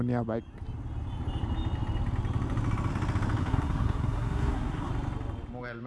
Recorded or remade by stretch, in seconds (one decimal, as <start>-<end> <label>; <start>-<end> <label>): 0.0-3.4 recorded; 3.4-4.9 remade; 4.9-5.9 recorded